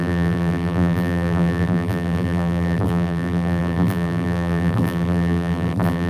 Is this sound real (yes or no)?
no